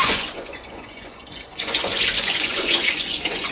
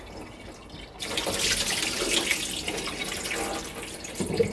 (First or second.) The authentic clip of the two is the second